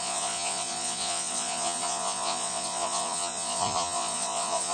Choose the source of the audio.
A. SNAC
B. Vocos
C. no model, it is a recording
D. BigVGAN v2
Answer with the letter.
B